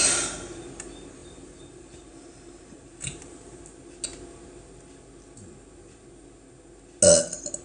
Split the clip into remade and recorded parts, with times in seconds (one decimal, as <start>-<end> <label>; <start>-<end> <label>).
0.0-1.2 recorded; 1.2-3.6 remade; 3.6-7.6 recorded